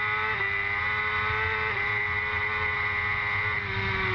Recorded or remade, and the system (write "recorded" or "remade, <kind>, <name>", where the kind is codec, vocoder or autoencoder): recorded